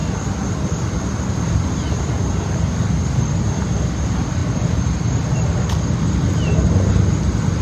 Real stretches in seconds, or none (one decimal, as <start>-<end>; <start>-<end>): 0.0-7.6